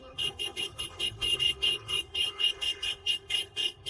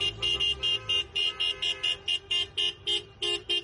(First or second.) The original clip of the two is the second